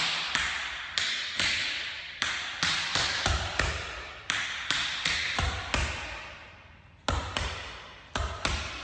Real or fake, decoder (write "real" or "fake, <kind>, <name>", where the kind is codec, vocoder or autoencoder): real